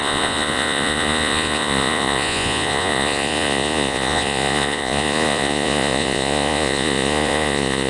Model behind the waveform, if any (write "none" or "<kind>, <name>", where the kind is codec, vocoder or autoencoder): vocoder, Vocos